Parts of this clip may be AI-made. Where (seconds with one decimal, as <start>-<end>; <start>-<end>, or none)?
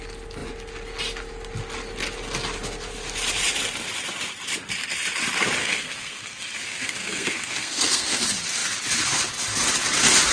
5.6-8.2